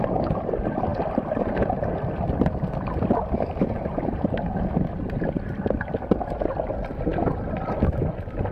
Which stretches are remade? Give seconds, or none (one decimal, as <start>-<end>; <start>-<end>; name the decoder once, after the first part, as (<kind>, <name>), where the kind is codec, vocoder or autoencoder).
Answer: none